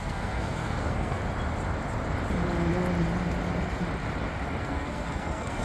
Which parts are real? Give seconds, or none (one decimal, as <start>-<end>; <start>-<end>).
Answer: 1.2-4.6